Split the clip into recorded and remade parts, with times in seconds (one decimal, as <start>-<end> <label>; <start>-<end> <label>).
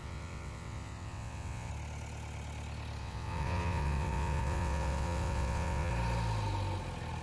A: 0.0-1.7 remade; 1.7-3.0 recorded; 3.0-5.9 remade; 5.9-7.2 recorded